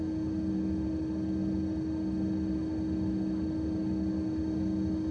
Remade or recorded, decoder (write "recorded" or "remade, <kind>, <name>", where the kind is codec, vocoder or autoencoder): recorded